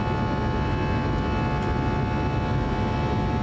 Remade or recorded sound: recorded